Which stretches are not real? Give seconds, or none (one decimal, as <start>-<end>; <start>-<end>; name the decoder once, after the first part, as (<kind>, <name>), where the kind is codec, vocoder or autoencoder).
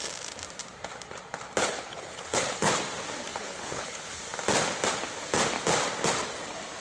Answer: 1.6-2.7 (codec, HILCodec); 3.3-4.2